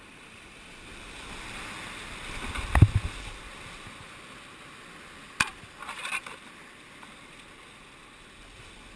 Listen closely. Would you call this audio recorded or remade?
recorded